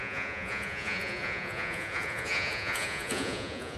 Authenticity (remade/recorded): remade